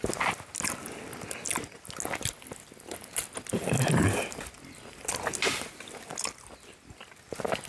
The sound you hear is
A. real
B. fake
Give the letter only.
A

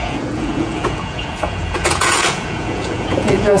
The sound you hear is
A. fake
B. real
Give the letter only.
A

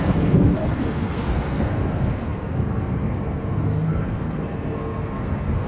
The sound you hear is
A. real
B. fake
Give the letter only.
B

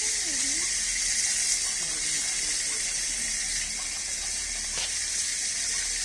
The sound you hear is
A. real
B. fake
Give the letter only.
A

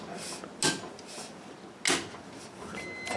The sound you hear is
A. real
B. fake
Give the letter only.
A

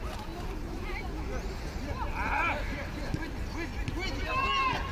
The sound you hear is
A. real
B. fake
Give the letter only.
A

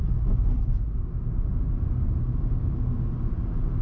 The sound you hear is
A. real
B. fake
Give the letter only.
A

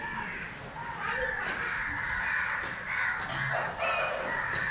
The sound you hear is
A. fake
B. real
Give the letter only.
B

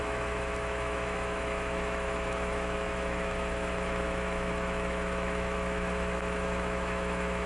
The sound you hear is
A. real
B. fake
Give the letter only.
B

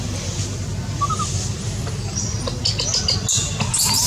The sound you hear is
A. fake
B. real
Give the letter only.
B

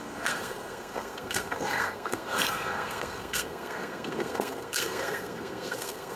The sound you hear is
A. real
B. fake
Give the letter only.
B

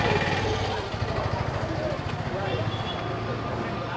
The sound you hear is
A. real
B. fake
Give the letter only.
A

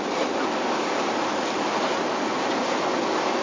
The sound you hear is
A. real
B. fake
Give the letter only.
A